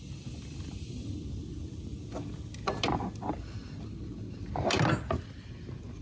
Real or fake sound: real